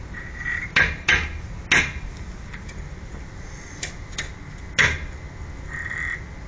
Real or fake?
real